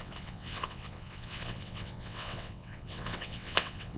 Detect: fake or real fake